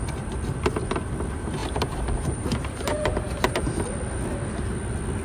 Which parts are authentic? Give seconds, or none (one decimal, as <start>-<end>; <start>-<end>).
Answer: 0.0-1.6; 3.8-5.2